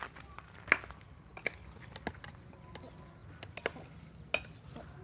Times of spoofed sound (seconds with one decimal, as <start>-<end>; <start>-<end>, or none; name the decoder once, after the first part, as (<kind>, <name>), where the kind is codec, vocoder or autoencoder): none